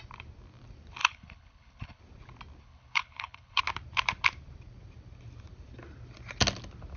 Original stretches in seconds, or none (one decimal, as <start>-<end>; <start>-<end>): 0.0-1.0; 2.0-2.6; 3.6-7.0